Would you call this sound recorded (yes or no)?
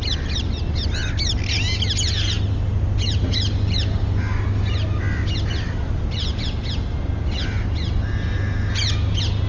yes